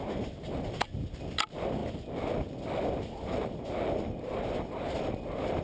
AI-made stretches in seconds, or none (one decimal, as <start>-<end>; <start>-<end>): none